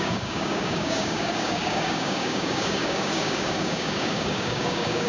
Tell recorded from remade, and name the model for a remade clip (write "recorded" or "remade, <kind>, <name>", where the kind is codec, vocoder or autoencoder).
remade, codec, DAC